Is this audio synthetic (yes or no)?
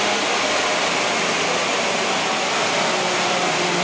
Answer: no